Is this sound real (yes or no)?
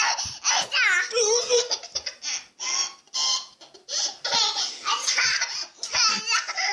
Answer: yes